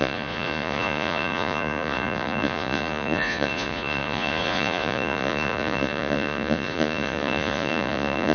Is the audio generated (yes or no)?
yes